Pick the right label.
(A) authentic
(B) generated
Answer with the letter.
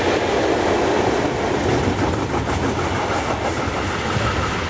A